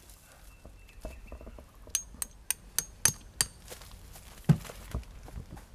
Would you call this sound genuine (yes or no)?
yes